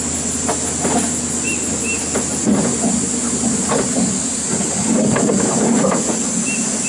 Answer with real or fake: real